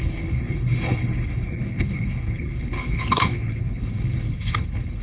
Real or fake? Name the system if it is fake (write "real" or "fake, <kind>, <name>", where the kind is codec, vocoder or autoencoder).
fake, codec, HILCodec